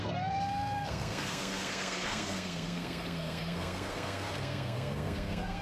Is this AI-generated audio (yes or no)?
yes